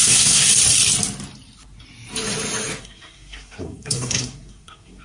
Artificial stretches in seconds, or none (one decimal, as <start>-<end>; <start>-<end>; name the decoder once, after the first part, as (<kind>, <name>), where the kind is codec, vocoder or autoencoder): 0.0-0.5 (codec, SNAC); 2.8-5.0